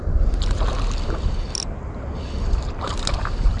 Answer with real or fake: real